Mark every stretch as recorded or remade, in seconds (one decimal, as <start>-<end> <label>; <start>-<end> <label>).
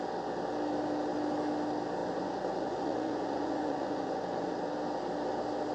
0.0-2.0 recorded; 2.0-4.5 remade; 4.5-5.7 recorded